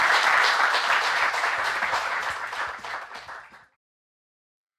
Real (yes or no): no